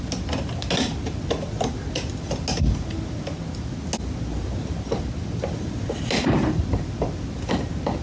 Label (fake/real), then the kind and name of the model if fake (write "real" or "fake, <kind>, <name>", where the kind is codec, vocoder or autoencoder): real